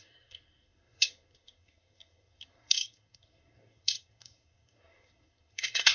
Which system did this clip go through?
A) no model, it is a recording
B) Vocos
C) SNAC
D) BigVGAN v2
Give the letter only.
C